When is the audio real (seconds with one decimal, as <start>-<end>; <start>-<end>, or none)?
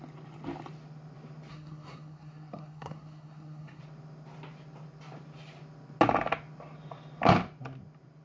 0.0-1.5; 3.8-8.2